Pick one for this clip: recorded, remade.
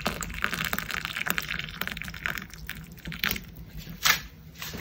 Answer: remade